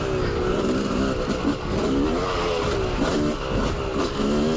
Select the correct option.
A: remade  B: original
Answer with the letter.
B